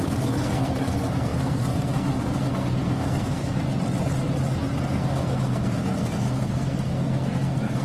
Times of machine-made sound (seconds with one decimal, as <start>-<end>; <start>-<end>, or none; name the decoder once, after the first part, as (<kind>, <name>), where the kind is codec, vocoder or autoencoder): 0.0-3.7 (codec, SNAC); 4.9-7.8